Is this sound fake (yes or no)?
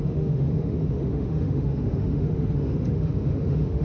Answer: yes